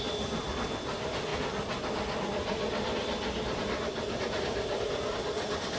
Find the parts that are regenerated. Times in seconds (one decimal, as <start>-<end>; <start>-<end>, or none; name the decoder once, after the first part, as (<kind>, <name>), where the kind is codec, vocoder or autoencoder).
none